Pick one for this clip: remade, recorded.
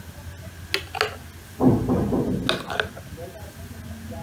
recorded